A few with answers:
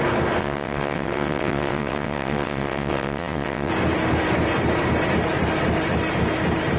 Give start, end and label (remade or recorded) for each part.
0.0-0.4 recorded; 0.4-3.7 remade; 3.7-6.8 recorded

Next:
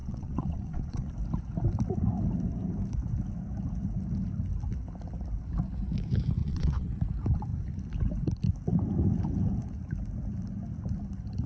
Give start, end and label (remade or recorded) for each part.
0.0-1.1 remade; 1.1-6.4 recorded; 6.4-6.9 remade; 6.9-11.5 recorded

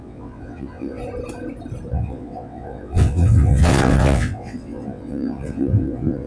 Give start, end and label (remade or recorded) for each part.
0.0-1.0 remade; 1.0-1.9 recorded; 1.9-6.3 remade

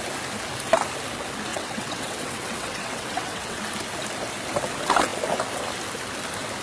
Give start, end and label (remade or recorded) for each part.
0.0-1.5 recorded; 1.5-3.6 remade; 3.6-6.6 recorded

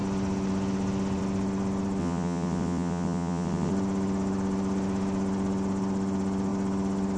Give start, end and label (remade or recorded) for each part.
0.0-2.0 recorded; 2.0-3.7 remade; 3.7-7.2 recorded